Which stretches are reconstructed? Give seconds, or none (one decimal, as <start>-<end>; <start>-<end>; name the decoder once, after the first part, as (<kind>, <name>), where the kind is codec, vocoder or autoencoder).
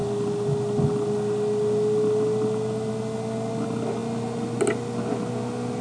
none